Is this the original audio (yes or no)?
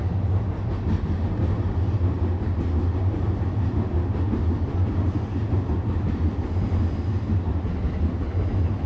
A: yes